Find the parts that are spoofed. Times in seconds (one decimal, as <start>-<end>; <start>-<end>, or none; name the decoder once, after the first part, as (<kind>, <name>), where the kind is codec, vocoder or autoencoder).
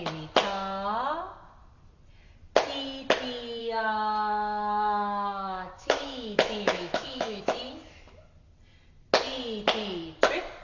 3.6-7.4 (autoencoder, DAC-VAE)